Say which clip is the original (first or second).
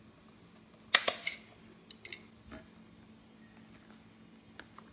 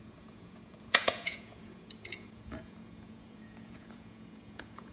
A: first